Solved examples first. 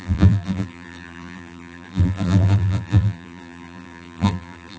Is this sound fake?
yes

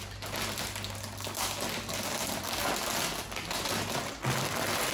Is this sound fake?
no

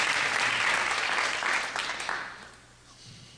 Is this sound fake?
no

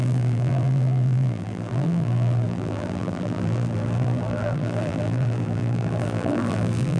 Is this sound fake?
yes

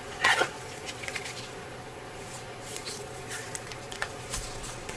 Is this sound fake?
yes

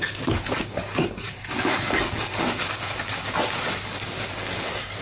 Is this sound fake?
yes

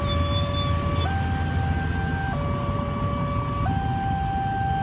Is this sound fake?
no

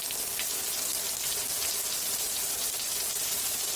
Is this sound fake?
no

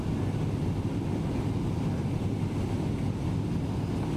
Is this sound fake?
no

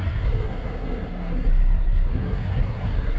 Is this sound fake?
yes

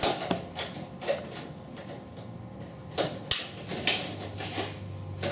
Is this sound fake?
no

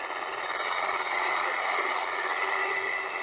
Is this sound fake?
no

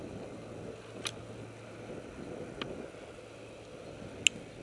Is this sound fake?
no